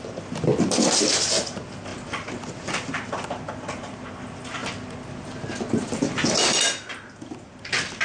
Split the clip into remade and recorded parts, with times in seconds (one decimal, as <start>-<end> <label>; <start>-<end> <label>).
0.0-8.0 recorded